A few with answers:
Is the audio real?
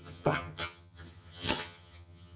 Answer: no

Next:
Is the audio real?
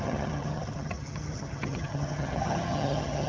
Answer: no